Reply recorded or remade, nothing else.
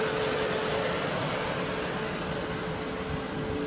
recorded